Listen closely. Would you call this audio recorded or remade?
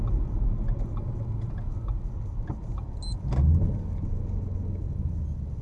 recorded